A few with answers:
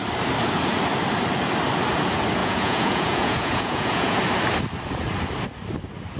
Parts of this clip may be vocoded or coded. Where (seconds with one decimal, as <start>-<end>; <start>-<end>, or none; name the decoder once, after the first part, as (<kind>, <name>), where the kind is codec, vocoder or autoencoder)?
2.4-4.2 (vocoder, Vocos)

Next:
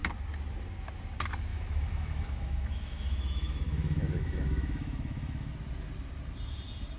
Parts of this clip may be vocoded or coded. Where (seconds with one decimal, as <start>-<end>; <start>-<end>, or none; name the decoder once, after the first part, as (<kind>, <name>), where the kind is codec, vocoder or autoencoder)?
1.5-5.5 (autoencoder, DAC-VAE)

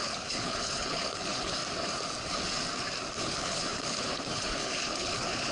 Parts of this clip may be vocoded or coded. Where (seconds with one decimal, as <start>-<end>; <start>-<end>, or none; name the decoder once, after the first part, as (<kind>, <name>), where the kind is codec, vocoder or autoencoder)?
0.0-1.6 (codec, HILCodec); 3.2-5.5